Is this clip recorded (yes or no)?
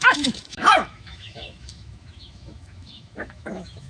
no